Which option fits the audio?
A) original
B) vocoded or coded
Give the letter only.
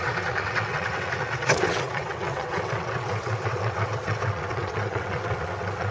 B